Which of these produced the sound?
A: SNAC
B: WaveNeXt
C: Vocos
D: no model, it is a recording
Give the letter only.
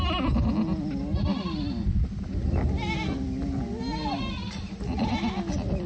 D